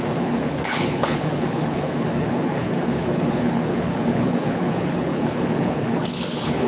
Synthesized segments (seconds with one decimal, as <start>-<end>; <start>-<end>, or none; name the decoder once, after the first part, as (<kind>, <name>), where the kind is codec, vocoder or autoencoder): 0.0-6.7 (codec, HILCodec)